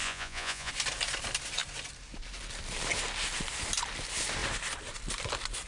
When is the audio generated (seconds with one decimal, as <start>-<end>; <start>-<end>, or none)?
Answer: 0.0-0.7